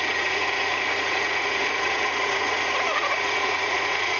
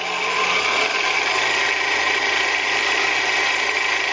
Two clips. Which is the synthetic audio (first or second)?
first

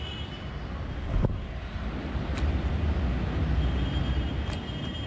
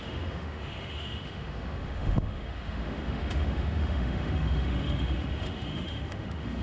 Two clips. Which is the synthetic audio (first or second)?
second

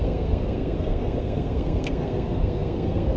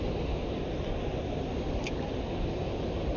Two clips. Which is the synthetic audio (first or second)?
first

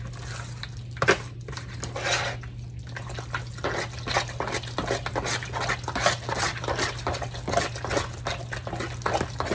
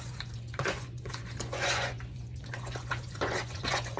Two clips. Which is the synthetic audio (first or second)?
second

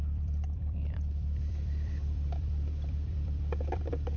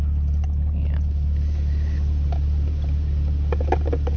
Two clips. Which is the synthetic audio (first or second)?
first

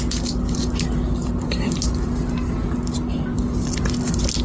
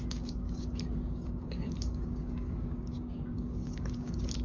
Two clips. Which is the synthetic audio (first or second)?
second